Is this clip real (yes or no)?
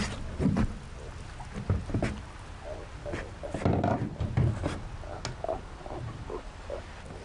yes